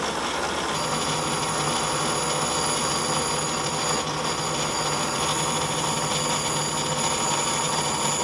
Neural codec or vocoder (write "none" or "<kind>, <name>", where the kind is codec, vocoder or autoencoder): none